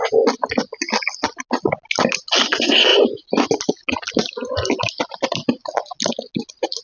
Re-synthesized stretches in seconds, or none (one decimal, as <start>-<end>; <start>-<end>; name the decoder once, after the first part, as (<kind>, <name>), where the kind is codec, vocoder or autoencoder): none